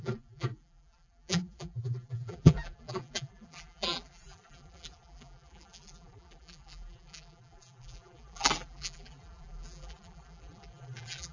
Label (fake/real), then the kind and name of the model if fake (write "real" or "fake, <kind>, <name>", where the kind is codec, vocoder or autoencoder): fake, vocoder, BigVGAN v2